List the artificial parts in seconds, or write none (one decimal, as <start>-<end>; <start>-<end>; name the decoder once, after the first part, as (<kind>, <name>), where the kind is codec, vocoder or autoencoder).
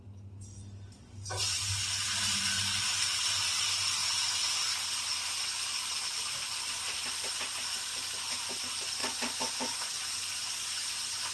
9.0-11.3 (vocoder, Vocos)